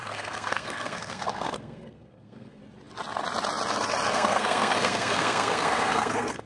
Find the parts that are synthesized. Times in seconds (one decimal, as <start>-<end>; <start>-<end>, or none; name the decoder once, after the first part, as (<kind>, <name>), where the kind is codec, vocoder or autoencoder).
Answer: 0.0-2.6 (codec, SNAC); 4.1-6.5